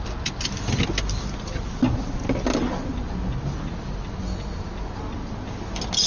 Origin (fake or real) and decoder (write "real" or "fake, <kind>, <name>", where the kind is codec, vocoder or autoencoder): real